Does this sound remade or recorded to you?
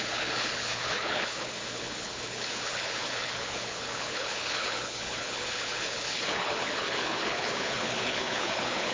remade